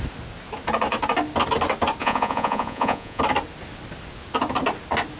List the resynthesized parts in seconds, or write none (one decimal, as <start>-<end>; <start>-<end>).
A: 2.0-3.2